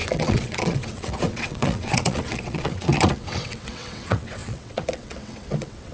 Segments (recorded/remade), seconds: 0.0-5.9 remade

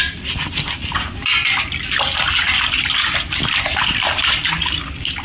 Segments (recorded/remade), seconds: 0.0-5.2 recorded

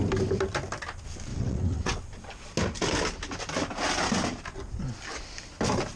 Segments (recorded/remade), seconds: 0.0-1.3 recorded; 1.3-2.0 remade; 2.0-6.0 recorded

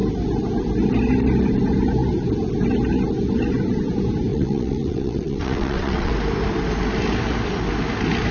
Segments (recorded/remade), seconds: 0.0-4.3 recorded; 4.3-6.1 remade; 6.1-8.3 recorded